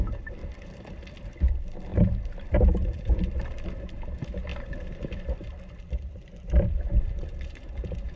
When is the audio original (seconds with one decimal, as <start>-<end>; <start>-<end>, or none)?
0.0-0.4; 1.3-1.9; 3.3-4.5; 7.7-8.2